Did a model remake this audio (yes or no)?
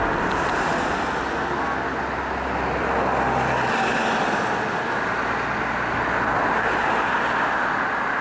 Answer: no